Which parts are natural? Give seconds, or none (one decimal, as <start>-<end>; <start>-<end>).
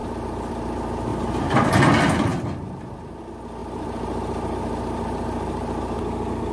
0.5-1.1; 1.7-2.3; 3.2-3.6; 6.0-6.5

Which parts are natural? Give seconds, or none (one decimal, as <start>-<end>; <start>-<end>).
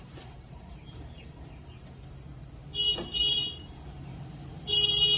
2.7-3.5